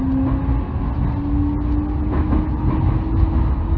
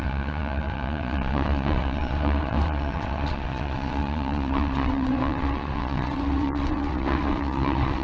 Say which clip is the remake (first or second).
second